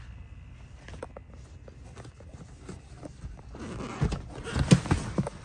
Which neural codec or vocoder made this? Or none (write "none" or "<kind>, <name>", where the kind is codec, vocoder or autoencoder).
none